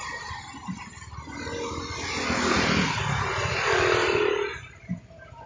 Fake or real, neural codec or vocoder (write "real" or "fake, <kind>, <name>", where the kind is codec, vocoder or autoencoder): real